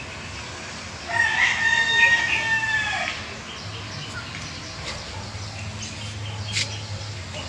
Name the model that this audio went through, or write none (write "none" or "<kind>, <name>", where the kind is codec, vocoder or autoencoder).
none